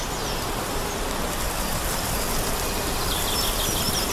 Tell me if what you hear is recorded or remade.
recorded